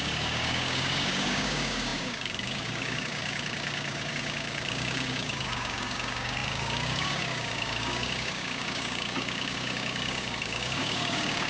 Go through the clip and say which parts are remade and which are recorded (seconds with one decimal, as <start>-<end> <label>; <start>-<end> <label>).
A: 0.0-11.5 remade